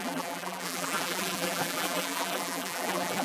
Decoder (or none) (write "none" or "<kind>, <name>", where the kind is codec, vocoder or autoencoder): vocoder, BigVGAN v2